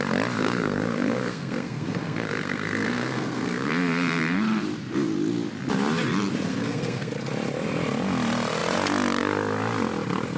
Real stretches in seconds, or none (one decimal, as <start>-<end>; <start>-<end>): 0.0-0.4; 3.7-6.5; 7.1-10.4